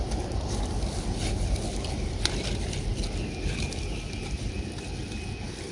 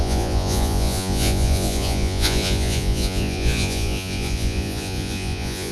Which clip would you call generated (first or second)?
second